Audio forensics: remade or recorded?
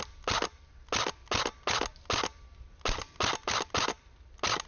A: recorded